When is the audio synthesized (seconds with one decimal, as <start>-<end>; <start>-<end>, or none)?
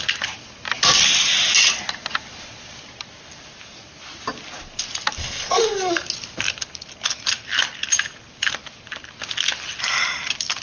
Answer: 5.2-5.9